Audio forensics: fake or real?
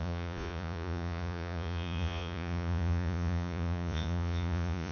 fake